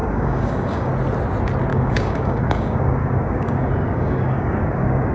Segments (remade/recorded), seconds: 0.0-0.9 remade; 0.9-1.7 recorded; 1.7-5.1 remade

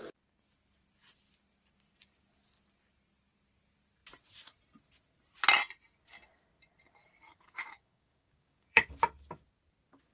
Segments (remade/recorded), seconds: 0.0-7.3 recorded; 7.3-8.9 remade; 8.9-10.1 recorded

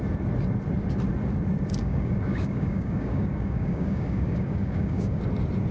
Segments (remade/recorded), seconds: 0.0-1.8 recorded; 1.8-5.2 remade; 5.2-5.7 recorded

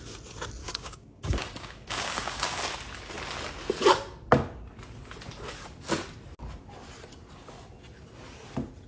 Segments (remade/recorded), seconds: 0.0-0.6 recorded; 0.6-2.6 remade; 2.6-8.9 recorded

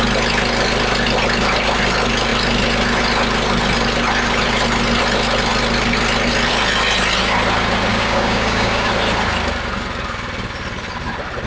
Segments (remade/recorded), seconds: 0.0-7.9 recorded; 7.9-8.9 remade; 8.9-11.5 recorded